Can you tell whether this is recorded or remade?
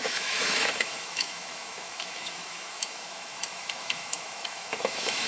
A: remade